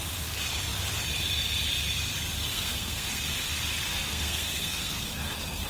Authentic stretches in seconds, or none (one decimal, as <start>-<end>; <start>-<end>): 0.0-2.5; 3.2-3.9; 5.1-5.7